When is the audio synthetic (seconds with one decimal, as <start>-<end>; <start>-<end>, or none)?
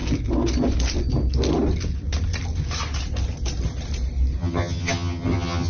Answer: 4.4-5.7